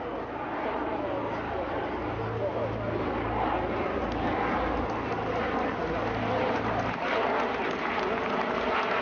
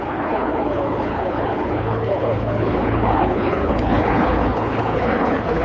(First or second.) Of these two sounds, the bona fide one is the first